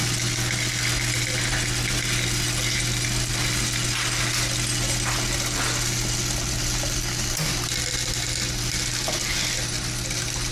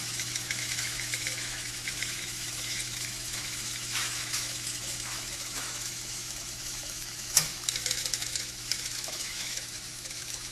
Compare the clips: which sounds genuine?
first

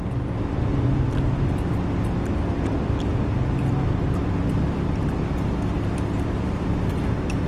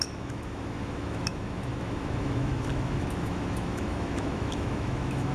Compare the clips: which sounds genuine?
first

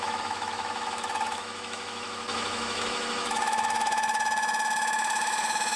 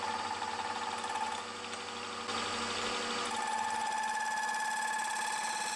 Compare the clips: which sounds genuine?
second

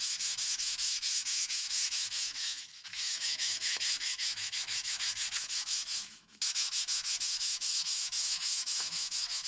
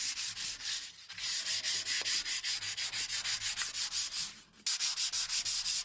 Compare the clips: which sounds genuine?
second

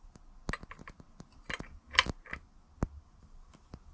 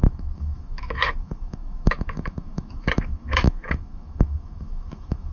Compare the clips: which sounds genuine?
first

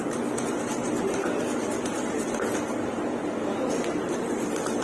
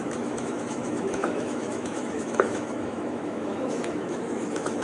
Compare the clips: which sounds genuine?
first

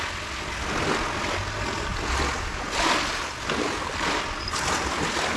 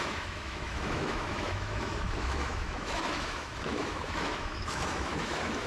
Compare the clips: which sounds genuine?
first